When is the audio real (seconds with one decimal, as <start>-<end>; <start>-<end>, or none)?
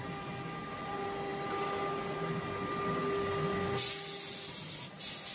0.0-5.3